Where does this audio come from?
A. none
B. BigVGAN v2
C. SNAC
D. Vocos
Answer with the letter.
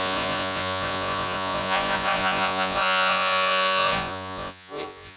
D